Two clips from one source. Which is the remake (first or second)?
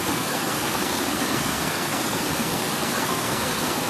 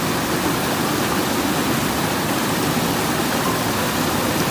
first